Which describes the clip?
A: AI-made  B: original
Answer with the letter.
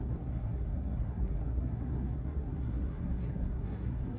A